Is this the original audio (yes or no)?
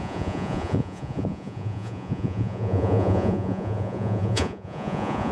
no